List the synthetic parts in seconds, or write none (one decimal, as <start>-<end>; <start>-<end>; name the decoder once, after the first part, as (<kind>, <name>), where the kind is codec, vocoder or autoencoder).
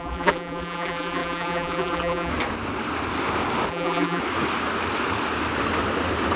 0.0-2.3 (vocoder, BigVGAN v2); 3.7-4.2